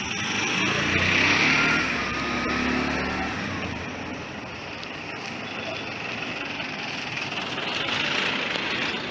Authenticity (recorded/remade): recorded